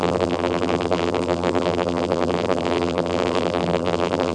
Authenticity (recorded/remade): remade